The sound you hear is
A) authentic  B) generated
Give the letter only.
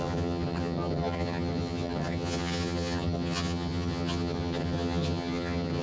B